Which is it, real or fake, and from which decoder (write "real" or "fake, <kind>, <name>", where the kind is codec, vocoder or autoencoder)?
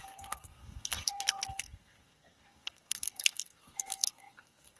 fake, codec, SNAC